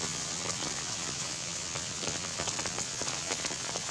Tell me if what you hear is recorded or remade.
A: remade